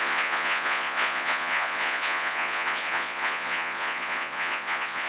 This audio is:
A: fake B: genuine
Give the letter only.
A